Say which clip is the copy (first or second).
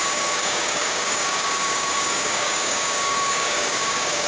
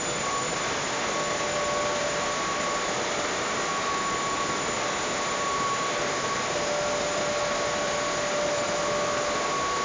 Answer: first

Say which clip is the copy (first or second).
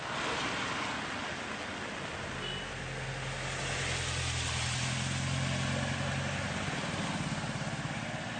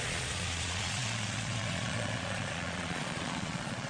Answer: second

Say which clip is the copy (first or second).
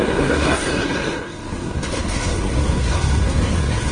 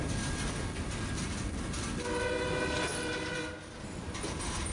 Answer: first